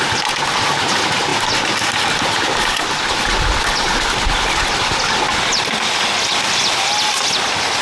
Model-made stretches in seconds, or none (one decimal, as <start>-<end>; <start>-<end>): none